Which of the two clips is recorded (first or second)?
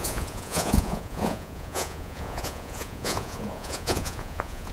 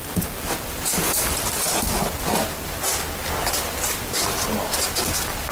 second